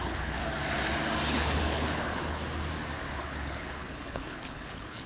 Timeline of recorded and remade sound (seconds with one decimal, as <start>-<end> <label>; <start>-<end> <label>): 0.0-0.4 remade; 0.4-1.3 recorded; 1.3-2.4 remade; 2.4-3.1 recorded; 3.1-5.1 remade